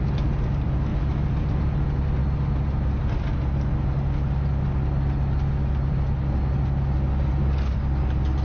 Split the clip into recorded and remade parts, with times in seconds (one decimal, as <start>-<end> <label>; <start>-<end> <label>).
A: 0.0-8.4 recorded